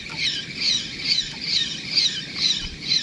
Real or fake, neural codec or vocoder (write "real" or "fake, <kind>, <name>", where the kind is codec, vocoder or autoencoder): real